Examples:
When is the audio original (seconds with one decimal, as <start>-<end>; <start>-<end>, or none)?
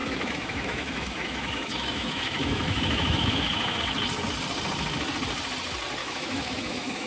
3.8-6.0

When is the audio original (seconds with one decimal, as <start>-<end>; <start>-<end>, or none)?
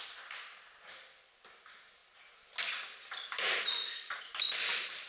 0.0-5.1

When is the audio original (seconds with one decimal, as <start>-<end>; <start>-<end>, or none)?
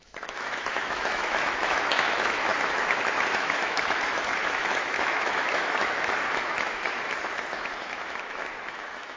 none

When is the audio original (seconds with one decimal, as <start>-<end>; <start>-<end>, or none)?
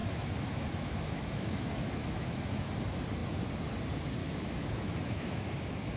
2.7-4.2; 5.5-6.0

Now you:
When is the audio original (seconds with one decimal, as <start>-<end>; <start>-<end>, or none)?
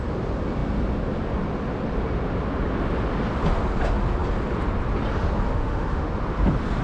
0.0-5.5; 6.1-6.8